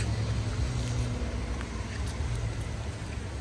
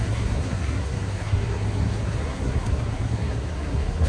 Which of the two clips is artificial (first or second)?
second